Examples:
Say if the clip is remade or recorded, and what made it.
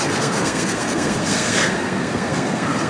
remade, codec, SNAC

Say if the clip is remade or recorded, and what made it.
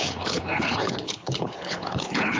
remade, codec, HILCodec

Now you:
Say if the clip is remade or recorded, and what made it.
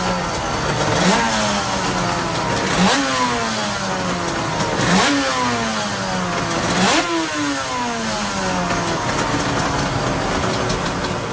recorded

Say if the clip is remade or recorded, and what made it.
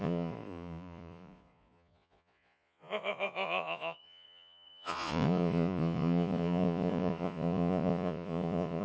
remade, vocoder, Vocos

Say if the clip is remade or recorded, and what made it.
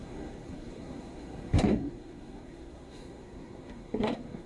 remade, codec, SNAC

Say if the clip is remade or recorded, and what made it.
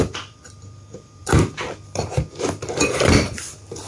remade, vocoder, BigVGAN v2